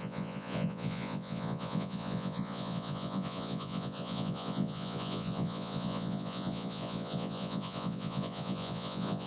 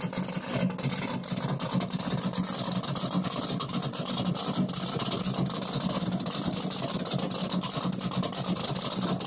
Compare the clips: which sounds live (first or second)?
second